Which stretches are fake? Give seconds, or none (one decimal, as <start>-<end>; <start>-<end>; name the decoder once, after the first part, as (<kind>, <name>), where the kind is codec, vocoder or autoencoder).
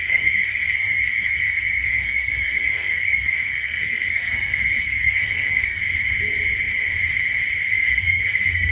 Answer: 0.0-5.8 (codec, SNAC); 7.7-8.7